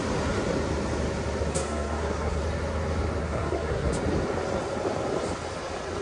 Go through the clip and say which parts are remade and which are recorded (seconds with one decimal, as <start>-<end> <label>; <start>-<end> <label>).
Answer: 0.0-1.5 recorded; 1.5-2.4 remade; 2.4-3.2 recorded; 3.2-3.9 remade; 3.9-6.0 recorded